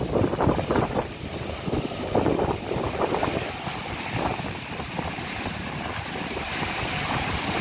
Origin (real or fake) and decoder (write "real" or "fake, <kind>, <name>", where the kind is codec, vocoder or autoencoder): fake, vocoder, BigVGAN v2